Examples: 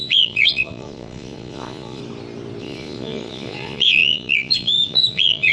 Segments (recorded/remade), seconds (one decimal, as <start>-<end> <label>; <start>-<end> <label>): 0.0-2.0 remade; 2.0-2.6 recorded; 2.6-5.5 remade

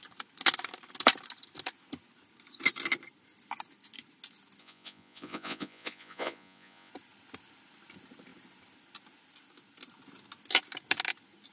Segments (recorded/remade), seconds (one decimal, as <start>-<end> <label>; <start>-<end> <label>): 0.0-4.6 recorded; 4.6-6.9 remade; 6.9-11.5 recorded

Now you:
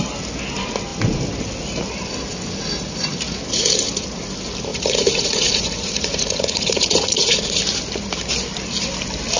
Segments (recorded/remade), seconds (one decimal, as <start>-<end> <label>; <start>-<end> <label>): 0.0-4.7 recorded; 4.7-7.6 remade; 7.6-9.4 recorded

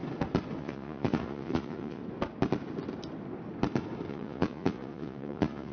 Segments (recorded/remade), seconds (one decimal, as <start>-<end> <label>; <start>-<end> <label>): 0.0-0.6 recorded; 0.6-2.0 remade; 2.0-4.1 recorded; 4.1-5.7 remade

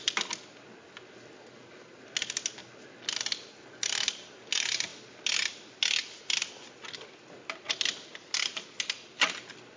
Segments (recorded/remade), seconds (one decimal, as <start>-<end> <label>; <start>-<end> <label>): 0.0-9.8 recorded

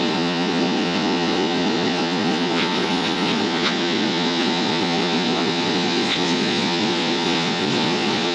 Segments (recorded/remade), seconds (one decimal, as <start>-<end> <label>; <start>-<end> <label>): 0.0-8.3 remade